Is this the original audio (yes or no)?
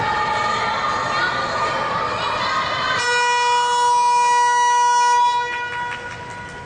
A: yes